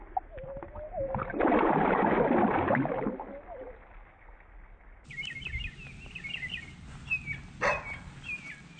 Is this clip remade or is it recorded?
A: recorded